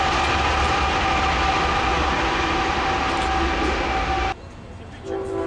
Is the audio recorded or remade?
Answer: recorded